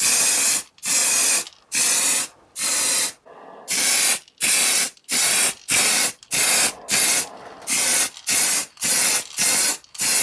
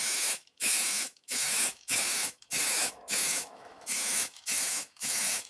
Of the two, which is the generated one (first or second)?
second